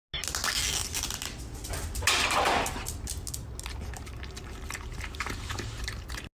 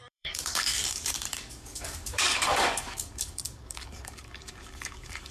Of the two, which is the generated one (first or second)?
second